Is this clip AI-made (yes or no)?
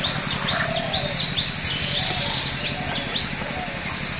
no